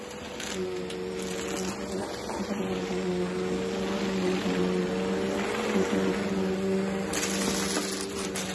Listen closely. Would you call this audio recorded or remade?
recorded